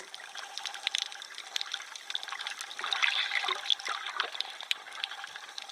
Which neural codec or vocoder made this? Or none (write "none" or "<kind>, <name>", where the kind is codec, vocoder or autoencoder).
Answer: none